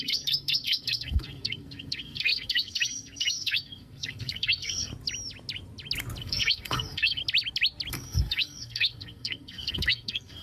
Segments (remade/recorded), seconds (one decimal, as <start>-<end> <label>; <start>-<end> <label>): 0.0-4.9 remade; 4.9-6.2 recorded; 6.2-7.2 remade; 7.2-7.9 recorded; 7.9-10.4 remade